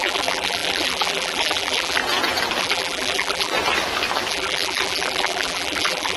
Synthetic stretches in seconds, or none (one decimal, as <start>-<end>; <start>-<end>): 0.0-2.0; 2.6-3.5; 4.3-6.2